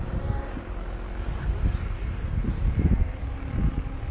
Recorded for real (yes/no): no